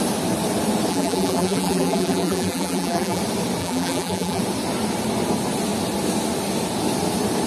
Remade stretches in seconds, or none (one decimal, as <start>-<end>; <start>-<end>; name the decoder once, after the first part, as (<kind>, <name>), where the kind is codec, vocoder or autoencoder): 0.9-3.2 (vocoder, BigVGAN v2); 3.6-4.4